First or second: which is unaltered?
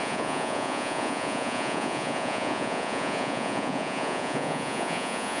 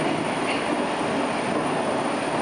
second